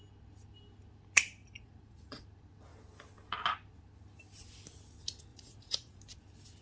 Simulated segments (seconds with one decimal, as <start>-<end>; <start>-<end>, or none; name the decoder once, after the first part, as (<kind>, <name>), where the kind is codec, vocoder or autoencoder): 1.4-2.2 (vocoder, Vocos); 5.3-6.0